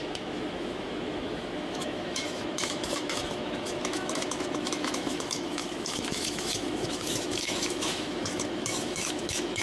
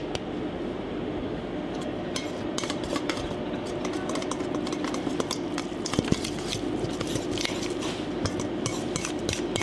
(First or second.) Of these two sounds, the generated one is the first